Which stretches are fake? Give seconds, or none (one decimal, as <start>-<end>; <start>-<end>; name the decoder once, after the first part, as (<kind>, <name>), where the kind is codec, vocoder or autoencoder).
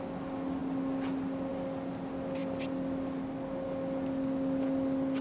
none